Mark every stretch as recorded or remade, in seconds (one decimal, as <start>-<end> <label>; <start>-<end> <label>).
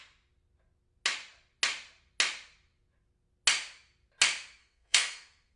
0.0-4.6 recorded; 4.6-5.6 remade